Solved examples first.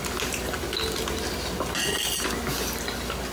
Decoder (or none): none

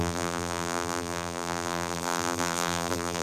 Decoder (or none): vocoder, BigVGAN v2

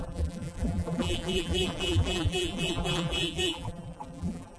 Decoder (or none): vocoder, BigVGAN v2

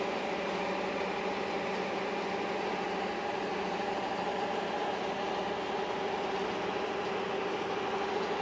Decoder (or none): none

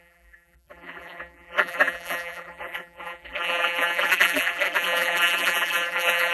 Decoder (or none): vocoder, BigVGAN v2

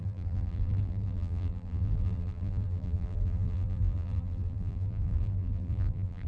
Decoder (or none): vocoder, BigVGAN v2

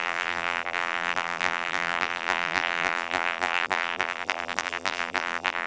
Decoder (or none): vocoder, BigVGAN v2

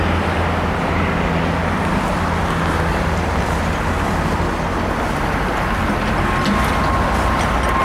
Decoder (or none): none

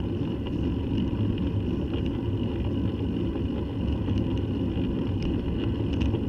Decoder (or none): none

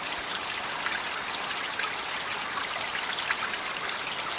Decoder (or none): none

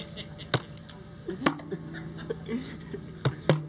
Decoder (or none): none